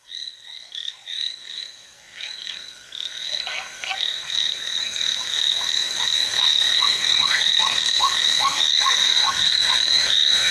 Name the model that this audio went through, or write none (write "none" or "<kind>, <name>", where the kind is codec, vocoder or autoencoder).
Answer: codec, SNAC